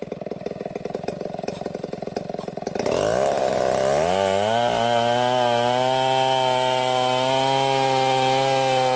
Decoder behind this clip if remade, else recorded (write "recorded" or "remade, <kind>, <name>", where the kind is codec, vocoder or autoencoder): recorded